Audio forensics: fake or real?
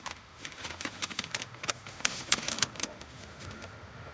fake